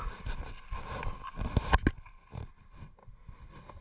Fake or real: real